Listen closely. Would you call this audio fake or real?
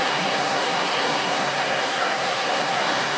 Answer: fake